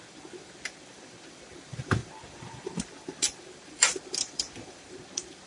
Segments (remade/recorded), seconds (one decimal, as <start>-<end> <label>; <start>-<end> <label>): 0.0-5.5 remade